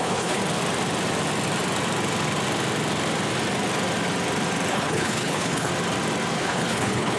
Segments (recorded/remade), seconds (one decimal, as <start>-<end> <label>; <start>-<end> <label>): 0.0-0.4 remade; 0.4-4.7 recorded; 4.7-5.7 remade; 5.7-6.3 recorded; 6.3-7.2 remade